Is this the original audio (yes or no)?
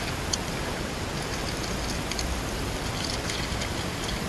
yes